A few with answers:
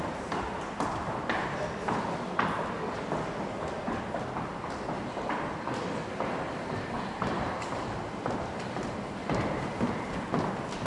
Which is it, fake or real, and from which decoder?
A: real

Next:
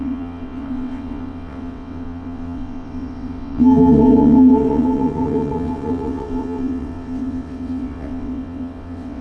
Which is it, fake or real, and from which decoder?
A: fake, vocoder, WaveNeXt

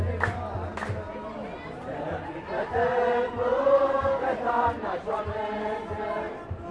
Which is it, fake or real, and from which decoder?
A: real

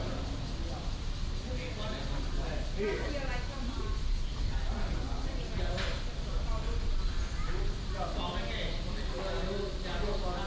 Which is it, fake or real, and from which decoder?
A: real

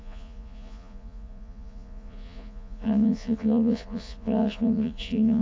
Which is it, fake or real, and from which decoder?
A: fake, vocoder, Vocos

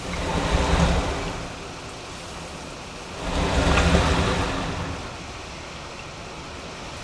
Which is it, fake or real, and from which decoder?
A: real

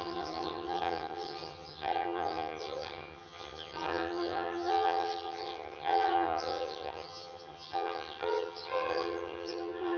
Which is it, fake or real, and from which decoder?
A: fake, vocoder, HiFi-GAN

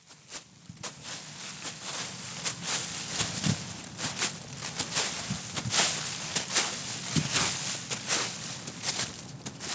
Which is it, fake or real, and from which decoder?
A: real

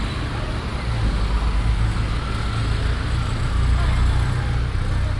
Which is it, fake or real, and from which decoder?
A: real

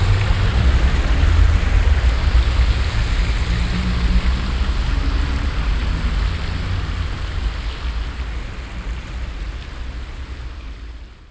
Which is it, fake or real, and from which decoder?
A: real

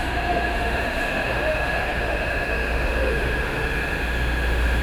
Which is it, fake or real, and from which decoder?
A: fake, autoencoder, DAC-VAE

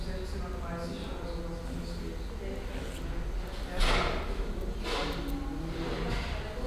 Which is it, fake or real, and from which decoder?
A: real